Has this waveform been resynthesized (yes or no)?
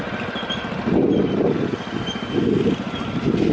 no